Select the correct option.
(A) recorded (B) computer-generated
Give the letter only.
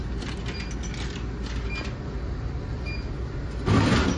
A